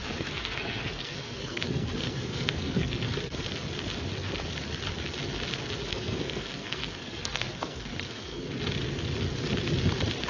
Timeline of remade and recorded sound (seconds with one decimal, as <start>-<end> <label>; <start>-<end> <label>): 0.0-3.1 remade; 3.1-5.9 recorded; 5.9-8.5 remade; 8.5-10.3 recorded